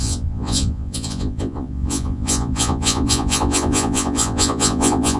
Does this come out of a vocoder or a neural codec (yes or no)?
yes